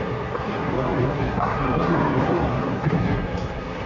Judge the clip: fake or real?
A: fake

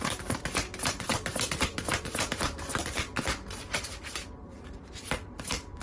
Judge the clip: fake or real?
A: fake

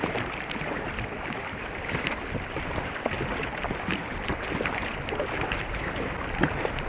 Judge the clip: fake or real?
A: real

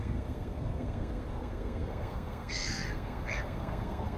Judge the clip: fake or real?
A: fake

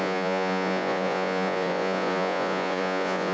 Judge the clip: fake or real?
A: fake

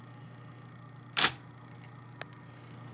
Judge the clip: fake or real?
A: real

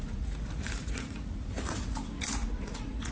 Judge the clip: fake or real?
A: fake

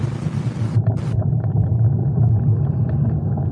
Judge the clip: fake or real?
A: fake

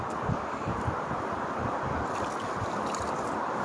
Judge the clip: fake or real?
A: real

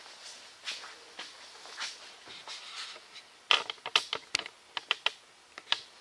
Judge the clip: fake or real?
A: real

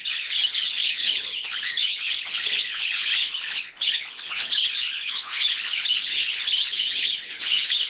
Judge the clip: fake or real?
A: fake